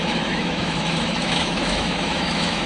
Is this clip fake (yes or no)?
yes